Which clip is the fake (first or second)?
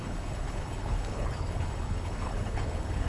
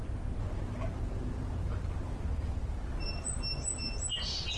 first